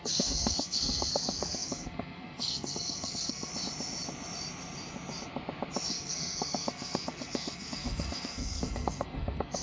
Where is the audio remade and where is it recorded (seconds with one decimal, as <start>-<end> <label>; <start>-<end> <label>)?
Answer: 0.0-3.5 remade; 3.5-5.9 recorded; 5.9-9.6 remade